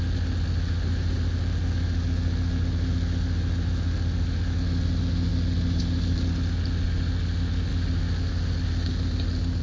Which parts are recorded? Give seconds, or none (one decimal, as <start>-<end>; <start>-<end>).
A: 0.0-9.6